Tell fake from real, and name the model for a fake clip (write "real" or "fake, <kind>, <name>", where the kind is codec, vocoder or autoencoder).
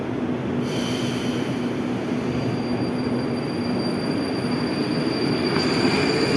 real